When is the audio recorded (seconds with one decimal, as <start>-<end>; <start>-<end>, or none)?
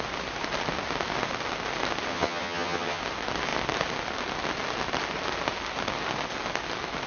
0.0-2.1; 3.0-7.1